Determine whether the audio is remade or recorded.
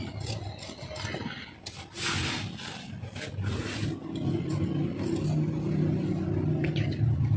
recorded